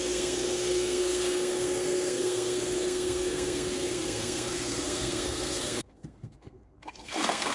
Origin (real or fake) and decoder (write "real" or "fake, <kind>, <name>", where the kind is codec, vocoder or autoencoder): fake, codec, SNAC